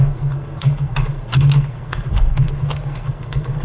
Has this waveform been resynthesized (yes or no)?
yes